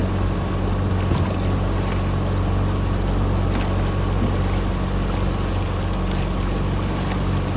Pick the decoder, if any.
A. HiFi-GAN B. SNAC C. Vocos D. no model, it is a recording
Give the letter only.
D